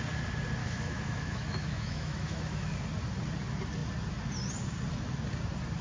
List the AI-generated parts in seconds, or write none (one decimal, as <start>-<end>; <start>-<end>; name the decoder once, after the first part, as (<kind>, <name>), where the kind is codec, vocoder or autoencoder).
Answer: 0.6-2.8 (autoencoder, DAC-VAE)